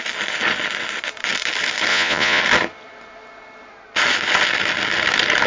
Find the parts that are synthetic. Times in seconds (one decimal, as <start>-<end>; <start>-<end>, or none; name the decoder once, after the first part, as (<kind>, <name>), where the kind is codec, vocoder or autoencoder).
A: 1.9-2.4 (vocoder, Vocos)